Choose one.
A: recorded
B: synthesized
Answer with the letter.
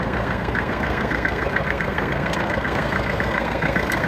B